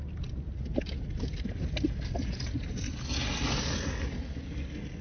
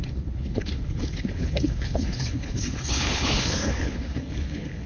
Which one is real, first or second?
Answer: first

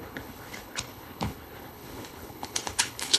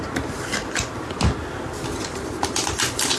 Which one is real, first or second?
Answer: second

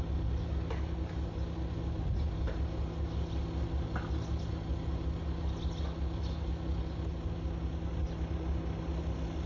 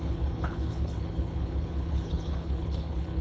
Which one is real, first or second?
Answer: first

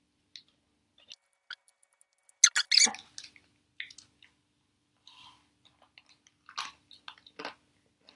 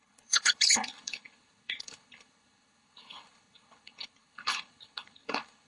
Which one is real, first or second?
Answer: first